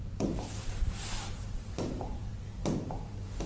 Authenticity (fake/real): fake